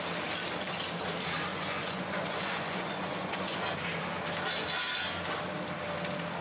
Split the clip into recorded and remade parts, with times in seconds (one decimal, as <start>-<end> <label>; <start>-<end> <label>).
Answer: 0.0-1.5 recorded; 1.5-3.6 remade; 3.6-6.4 recorded